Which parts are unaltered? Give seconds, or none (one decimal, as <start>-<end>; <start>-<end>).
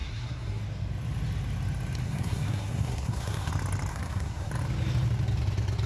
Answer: 0.6-2.0; 3.5-3.9; 4.5-5.9